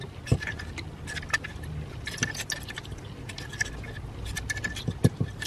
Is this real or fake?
real